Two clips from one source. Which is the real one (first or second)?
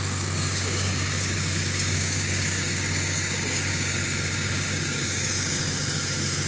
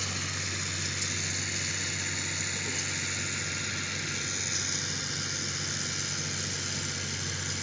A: second